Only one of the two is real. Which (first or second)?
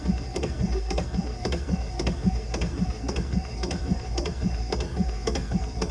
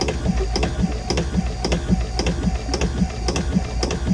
second